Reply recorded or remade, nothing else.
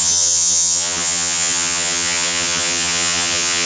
remade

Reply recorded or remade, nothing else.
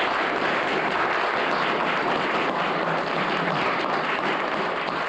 recorded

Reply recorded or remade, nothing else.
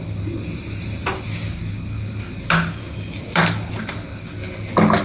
recorded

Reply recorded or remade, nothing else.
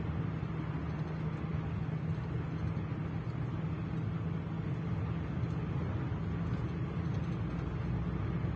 recorded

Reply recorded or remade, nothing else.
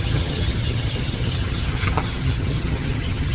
remade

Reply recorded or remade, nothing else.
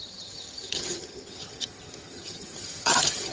remade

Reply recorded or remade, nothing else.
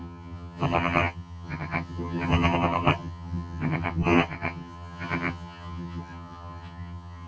remade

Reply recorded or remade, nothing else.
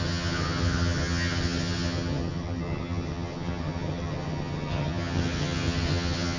remade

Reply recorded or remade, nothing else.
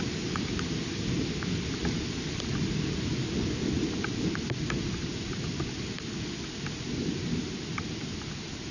recorded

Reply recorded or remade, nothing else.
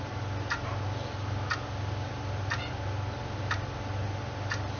recorded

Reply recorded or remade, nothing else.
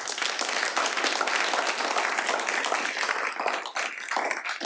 recorded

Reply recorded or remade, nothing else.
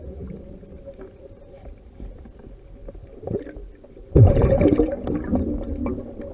recorded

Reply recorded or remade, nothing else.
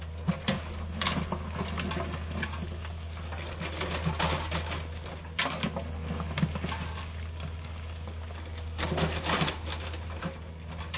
recorded